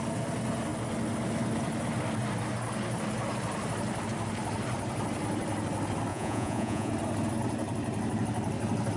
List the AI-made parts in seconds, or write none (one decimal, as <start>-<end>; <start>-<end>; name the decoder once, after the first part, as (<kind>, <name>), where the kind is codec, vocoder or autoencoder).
6.1-6.9 (vocoder, Vocos)